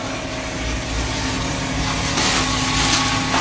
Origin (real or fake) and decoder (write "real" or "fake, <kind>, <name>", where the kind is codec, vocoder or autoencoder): real